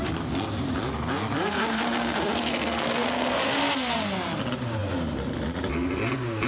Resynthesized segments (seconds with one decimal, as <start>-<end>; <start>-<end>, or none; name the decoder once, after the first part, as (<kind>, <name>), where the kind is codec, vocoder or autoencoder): 2.5-3.3 (codec, SNAC)